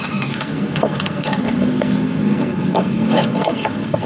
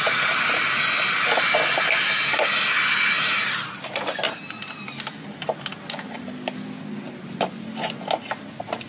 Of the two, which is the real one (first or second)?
second